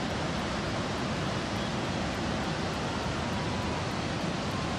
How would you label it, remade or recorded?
recorded